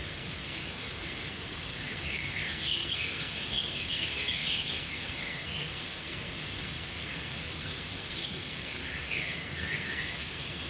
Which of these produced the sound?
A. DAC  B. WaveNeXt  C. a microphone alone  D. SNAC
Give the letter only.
D